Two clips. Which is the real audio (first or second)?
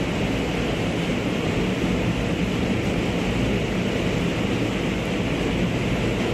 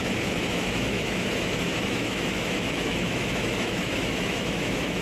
first